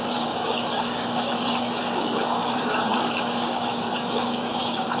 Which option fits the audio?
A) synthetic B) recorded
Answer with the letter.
A